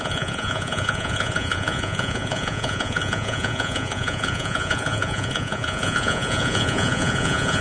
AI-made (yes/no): yes